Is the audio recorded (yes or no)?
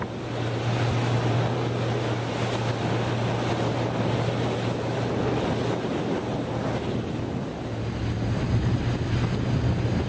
yes